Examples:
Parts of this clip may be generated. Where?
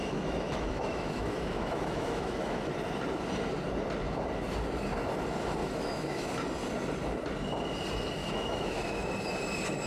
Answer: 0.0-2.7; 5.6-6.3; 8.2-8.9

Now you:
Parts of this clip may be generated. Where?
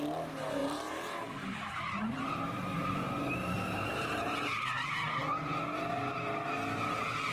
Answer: 0.6-2.3; 2.8-4.8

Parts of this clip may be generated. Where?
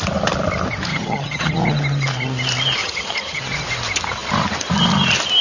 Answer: 0.9-1.5; 2.8-3.4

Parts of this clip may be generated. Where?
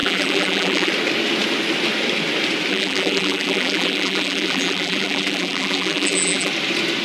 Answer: 0.0-0.9; 2.7-6.5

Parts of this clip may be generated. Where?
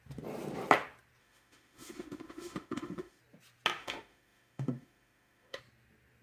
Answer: 1.2-3.2; 3.8-5.6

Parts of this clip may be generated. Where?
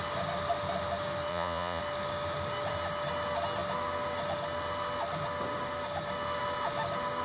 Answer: 1.3-1.8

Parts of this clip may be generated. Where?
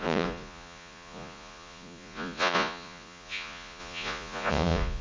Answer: 0.0-5.0